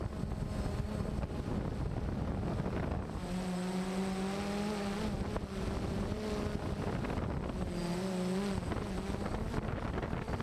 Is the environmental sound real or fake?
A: real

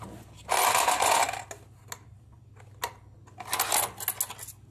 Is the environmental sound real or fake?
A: real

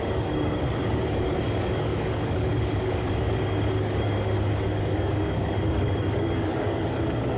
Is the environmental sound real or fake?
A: fake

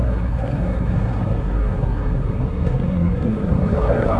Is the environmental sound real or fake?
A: fake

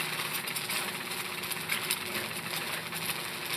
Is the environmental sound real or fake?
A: real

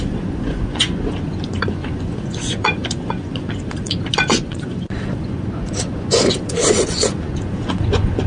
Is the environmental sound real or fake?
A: fake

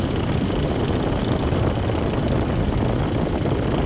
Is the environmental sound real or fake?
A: real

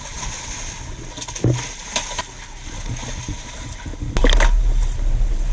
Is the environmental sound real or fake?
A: real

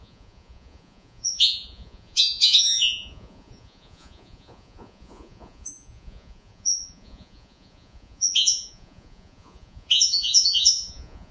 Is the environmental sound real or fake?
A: fake